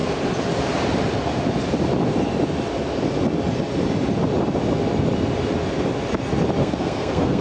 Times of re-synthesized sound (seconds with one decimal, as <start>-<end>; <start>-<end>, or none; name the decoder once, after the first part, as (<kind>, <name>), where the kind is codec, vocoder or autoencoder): 6.6-7.4 (codec, SNAC)